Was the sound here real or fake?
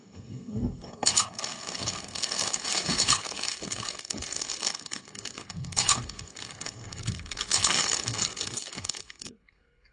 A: fake